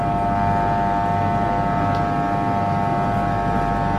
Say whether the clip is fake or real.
real